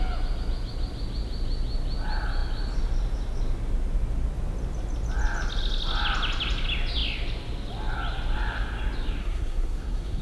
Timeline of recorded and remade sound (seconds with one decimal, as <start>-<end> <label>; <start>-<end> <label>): 0.0-9.2 recorded; 9.2-10.2 remade